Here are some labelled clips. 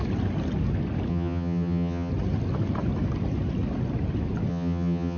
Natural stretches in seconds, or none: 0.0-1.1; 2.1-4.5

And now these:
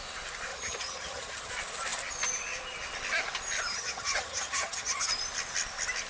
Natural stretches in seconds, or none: 0.0-0.5; 1.5-3.7; 5.1-6.1

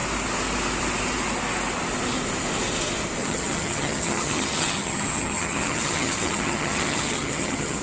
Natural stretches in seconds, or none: 0.0-3.2

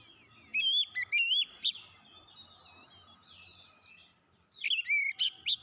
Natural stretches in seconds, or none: 0.0-5.6